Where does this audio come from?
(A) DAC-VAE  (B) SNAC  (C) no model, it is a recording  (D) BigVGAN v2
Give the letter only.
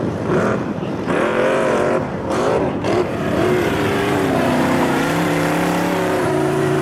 D